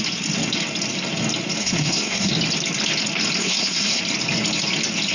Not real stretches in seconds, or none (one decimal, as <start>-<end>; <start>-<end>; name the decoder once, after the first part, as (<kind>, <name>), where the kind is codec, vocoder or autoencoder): 1.6-2.3 (codec, SNAC); 3.4-4.0